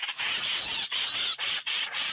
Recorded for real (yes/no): no